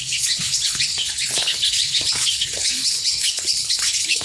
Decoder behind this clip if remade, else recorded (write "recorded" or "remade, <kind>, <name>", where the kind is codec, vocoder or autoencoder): remade, codec, HILCodec